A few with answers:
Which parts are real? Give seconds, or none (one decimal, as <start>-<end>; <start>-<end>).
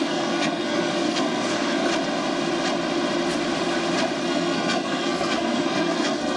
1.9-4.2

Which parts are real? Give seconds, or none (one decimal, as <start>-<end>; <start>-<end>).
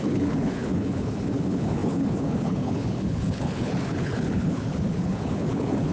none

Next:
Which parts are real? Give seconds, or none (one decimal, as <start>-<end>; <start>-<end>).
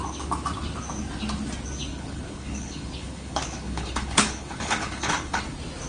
0.0-1.9; 5.4-5.9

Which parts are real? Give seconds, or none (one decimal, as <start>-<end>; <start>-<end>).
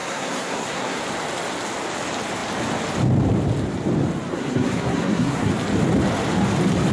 1.0-4.3; 5.5-6.9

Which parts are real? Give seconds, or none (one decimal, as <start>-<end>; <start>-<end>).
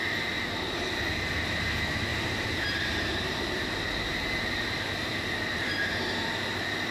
0.0-2.1; 6.1-6.9